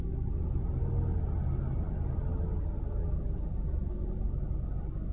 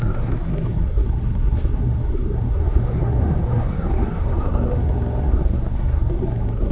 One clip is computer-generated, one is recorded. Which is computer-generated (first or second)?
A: second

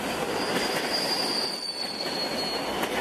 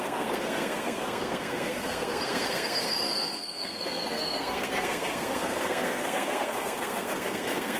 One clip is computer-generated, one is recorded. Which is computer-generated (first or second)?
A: second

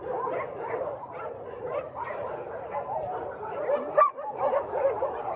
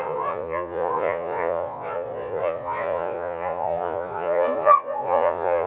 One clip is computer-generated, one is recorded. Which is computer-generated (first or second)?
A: second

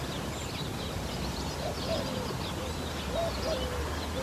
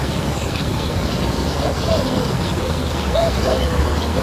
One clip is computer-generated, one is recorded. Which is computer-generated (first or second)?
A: second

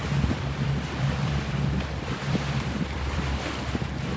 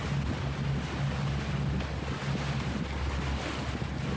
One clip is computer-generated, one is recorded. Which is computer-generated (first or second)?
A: first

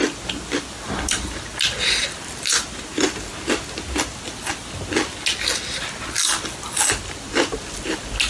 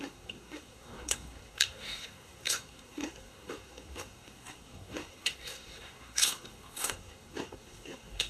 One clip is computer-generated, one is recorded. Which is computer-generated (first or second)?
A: second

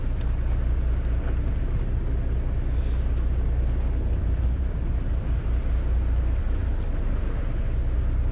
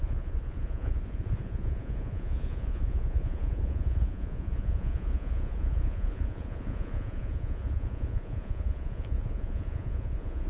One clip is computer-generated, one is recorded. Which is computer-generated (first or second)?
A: second